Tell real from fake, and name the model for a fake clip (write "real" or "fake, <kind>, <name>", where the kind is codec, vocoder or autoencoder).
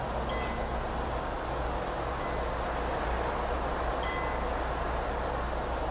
real